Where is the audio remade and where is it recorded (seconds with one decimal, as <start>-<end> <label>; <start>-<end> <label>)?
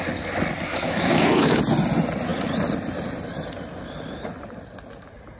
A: 0.0-0.7 recorded; 0.7-1.6 remade; 1.6-5.4 recorded